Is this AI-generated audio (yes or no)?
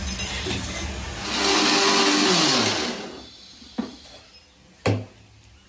no